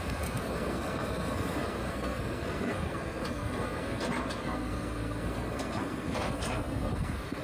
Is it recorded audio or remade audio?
remade